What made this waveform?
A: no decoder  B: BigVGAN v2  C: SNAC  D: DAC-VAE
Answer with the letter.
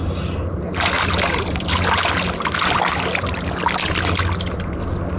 A